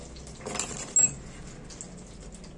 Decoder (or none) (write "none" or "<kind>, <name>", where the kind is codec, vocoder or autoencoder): none